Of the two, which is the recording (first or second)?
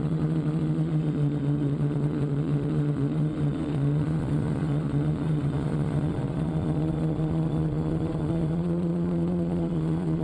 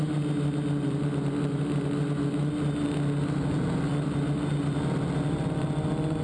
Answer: second